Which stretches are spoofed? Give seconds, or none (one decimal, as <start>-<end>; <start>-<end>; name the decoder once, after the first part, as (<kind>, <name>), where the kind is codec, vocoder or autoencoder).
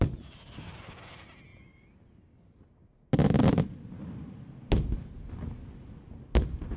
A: none